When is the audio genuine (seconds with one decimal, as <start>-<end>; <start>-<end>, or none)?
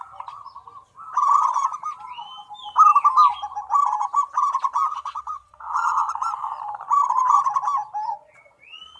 0.0-4.9; 6.1-9.0